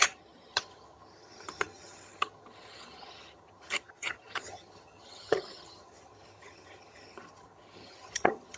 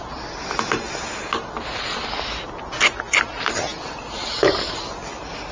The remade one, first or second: first